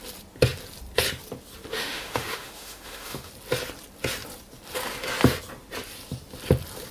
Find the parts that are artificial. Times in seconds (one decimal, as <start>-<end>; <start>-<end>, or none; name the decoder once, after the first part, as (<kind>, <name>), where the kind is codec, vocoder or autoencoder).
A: 1.7-3.3 (autoencoder, DAC-VAE)